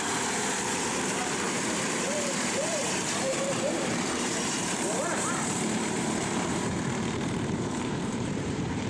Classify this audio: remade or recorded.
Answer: remade